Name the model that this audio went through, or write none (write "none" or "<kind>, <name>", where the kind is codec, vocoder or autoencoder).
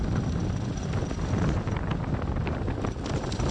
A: none